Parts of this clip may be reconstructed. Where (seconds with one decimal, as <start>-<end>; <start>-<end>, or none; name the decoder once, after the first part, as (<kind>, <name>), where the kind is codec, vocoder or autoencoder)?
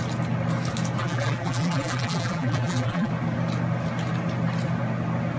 1.0-3.1 (vocoder, BigVGAN v2)